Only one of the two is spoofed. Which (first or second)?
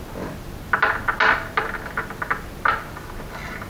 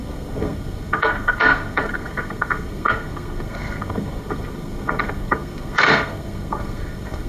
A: second